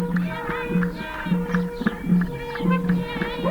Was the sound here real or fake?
real